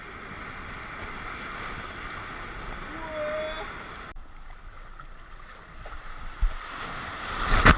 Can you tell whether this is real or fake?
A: real